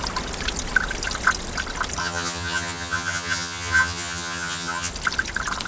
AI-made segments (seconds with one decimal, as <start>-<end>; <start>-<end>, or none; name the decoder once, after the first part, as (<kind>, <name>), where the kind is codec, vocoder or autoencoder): 2.0-4.9 (vocoder, HiFi-GAN)